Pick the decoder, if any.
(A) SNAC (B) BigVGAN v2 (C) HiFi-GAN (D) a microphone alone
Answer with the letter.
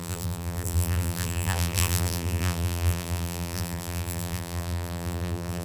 B